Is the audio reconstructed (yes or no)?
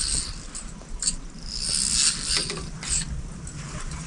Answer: no